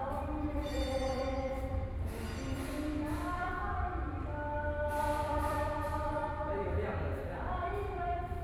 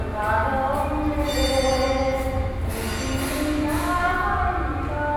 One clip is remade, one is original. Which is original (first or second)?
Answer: second